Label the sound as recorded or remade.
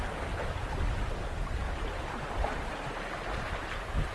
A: recorded